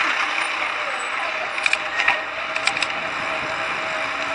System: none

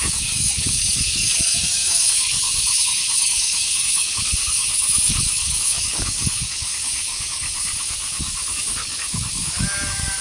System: codec, DAC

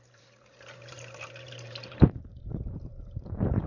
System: vocoder, BigVGAN v2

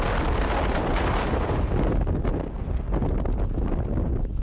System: none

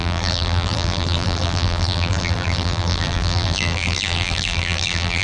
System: vocoder, BigVGAN v2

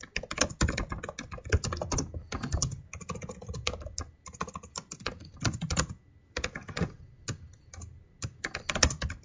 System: none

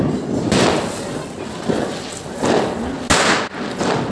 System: none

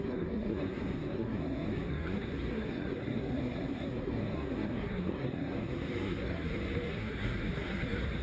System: codec, SNAC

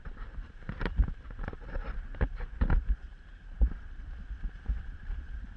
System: vocoder, BigVGAN v2